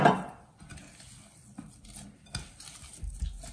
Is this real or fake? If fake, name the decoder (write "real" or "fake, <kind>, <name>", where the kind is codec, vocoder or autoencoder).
real